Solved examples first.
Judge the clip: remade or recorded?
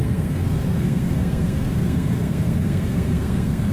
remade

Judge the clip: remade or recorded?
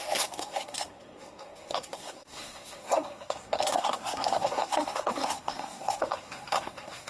remade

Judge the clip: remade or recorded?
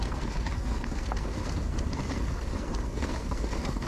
remade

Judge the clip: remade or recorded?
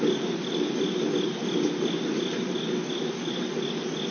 recorded